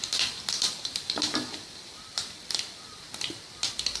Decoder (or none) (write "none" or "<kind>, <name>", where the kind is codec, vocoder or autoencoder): vocoder, BigVGAN v2